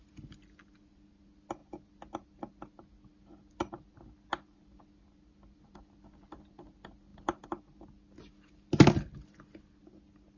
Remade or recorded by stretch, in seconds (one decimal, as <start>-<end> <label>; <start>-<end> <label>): 0.0-10.4 recorded